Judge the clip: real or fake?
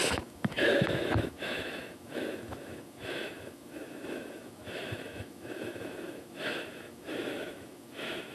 fake